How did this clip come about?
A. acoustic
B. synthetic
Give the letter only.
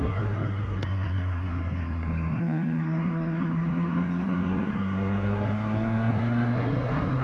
B